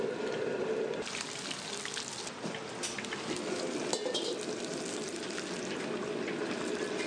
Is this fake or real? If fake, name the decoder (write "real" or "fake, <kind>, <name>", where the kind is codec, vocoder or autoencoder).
real